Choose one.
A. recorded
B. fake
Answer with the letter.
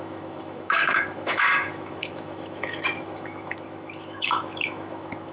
B